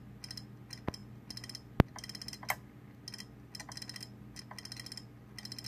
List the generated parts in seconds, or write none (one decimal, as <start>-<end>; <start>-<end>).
none